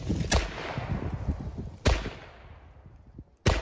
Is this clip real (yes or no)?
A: yes